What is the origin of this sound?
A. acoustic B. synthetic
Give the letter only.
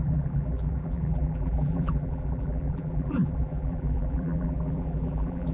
B